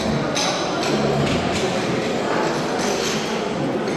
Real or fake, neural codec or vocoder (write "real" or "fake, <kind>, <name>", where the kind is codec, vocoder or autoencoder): real